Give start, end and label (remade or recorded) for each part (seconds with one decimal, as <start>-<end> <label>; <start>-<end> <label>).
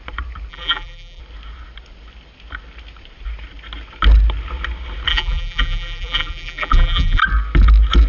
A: 0.0-0.5 recorded; 0.5-1.2 remade; 1.2-5.1 recorded; 5.1-7.2 remade; 7.2-8.1 recorded